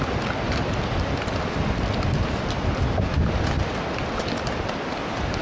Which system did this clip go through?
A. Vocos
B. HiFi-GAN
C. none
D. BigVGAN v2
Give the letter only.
C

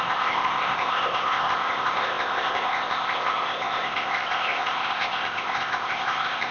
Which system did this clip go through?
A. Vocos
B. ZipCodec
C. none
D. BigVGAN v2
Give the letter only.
B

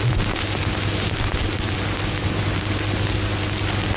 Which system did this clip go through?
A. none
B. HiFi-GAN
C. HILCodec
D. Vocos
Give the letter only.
A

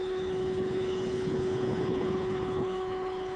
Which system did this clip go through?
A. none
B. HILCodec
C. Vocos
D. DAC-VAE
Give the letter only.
B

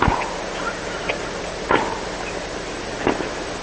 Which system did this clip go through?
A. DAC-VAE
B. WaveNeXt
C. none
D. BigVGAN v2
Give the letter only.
C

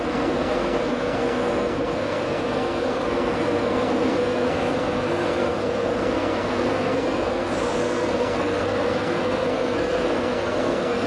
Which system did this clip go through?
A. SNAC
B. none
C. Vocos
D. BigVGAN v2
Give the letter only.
A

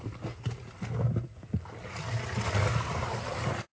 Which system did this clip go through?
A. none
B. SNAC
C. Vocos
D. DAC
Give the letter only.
A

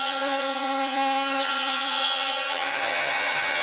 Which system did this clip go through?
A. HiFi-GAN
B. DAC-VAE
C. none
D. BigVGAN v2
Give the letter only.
A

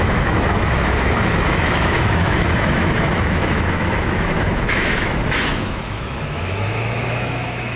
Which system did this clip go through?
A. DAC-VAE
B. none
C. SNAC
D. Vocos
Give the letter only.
A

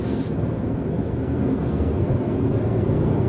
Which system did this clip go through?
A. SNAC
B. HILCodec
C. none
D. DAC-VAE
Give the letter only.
A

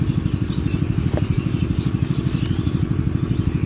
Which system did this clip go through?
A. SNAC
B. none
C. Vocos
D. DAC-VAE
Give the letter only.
B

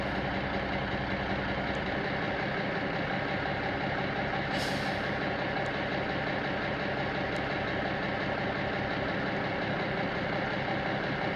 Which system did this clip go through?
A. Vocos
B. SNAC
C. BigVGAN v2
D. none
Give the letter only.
D